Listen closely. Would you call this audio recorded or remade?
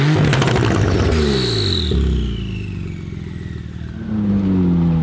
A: recorded